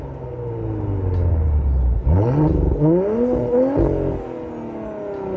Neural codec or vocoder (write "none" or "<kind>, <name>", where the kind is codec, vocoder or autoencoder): none